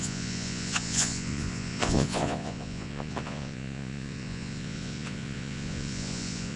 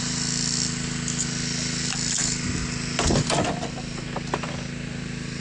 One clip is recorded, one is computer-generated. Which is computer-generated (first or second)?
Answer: first